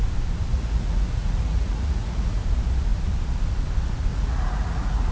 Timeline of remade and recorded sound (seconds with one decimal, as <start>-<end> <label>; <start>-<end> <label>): 0.0-0.5 recorded; 0.5-2.4 remade; 2.4-4.1 recorded; 4.1-5.1 remade